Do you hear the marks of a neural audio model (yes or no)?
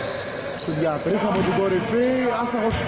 no